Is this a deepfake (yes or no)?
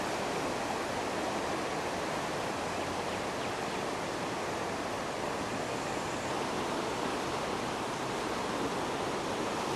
no